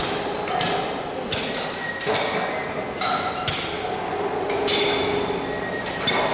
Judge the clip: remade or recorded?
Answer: recorded